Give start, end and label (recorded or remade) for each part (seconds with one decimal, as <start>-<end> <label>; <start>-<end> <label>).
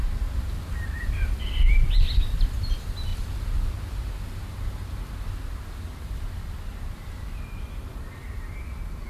0.0-9.1 recorded